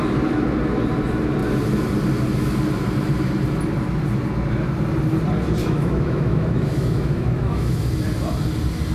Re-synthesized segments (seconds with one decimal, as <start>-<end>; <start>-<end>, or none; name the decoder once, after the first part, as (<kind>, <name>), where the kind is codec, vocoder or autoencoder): 5.6-7.8 (autoencoder, DAC-VAE)